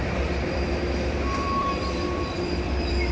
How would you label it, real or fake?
fake